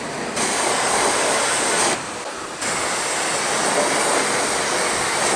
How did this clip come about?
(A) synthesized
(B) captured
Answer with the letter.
B